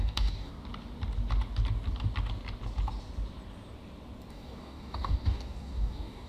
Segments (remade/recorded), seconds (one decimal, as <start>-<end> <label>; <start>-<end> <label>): 0.0-0.5 remade; 0.5-4.3 recorded; 4.3-6.3 remade